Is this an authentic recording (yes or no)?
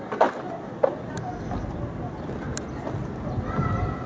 yes